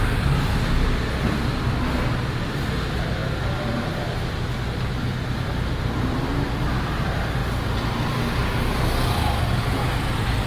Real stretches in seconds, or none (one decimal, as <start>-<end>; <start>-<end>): 0.0-10.5